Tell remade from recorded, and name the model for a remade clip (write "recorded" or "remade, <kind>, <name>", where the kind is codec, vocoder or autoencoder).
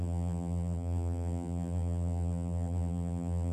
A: remade, vocoder, BigVGAN v2